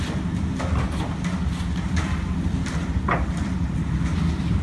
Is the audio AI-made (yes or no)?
no